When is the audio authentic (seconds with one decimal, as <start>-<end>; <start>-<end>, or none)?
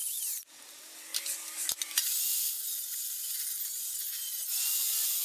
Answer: 0.0-5.2